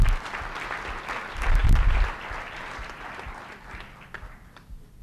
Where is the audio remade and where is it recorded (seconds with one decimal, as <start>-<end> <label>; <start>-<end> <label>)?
0.0-1.6 recorded; 1.6-4.6 remade; 4.6-5.0 recorded